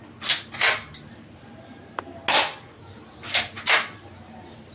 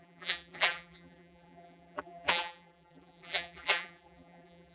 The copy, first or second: second